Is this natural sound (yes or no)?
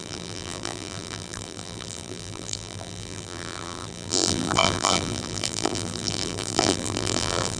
no